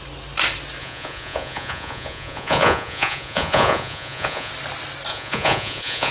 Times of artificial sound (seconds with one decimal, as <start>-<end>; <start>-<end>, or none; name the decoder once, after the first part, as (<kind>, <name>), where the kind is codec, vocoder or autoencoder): 0.8-4.5 (vocoder, Vocos); 5.1-6.1

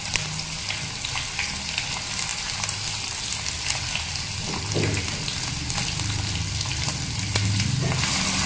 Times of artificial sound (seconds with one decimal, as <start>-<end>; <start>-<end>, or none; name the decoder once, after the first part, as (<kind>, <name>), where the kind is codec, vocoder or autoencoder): none

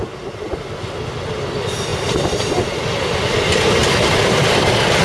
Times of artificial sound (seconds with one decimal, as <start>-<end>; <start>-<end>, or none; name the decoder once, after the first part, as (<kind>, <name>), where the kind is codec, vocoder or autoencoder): 1.9-5.0 (vocoder, BigVGAN v2)

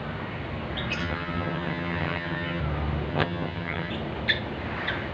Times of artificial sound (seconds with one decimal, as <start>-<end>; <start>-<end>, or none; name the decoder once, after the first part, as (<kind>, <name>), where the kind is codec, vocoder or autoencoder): 1.0-2.6 (vocoder, HiFi-GAN); 3.1-3.9

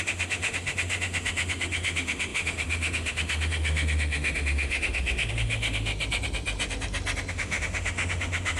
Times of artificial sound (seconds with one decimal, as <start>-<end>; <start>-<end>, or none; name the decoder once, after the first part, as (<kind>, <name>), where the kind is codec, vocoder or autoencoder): 0.0-5.9 (autoencoder, DAC-VAE); 7.3-8.6

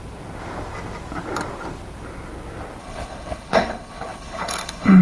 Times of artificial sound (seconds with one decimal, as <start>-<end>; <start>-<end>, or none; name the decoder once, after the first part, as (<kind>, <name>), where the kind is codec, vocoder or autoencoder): 2.8-5.0 (codec, HILCodec)

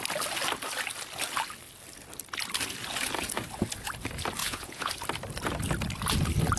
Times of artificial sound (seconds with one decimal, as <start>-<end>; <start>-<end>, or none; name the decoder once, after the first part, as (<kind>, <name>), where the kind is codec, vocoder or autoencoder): 4.4-4.9 (vocoder, Vocos)